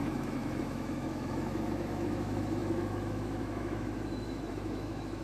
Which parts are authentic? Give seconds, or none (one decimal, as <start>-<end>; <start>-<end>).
none